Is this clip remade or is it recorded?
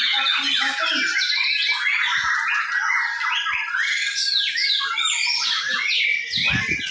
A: recorded